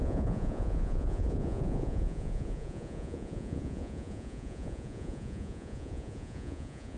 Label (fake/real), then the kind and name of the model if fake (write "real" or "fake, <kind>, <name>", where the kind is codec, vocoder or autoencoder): fake, vocoder, Vocos